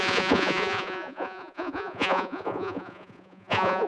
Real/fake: fake